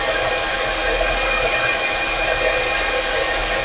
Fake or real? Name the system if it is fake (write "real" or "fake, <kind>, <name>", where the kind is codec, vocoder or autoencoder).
real